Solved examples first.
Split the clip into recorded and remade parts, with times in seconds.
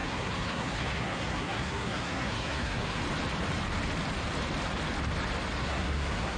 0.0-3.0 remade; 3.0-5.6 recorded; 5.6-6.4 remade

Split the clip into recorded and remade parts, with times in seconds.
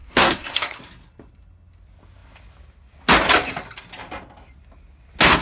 0.0-0.8 remade; 0.8-5.4 recorded